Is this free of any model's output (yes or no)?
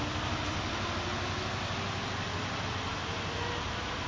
yes